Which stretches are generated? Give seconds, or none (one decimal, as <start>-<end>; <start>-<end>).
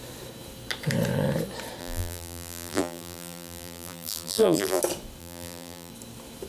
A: 1.8-4.8; 5.2-5.9